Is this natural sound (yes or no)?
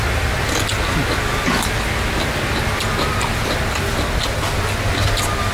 yes